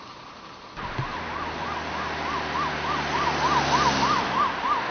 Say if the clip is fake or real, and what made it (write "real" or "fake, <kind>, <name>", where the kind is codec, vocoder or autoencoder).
real